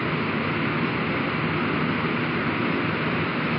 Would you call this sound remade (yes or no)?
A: no